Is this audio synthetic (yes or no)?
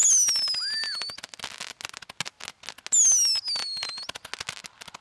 no